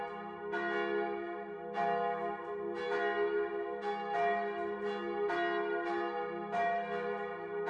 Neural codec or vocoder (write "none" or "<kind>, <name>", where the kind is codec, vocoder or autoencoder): none